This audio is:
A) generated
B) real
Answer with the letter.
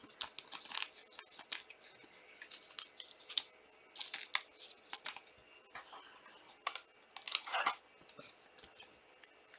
B